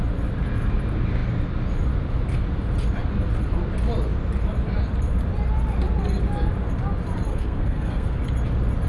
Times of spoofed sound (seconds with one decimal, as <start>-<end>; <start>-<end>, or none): 7.3-8.2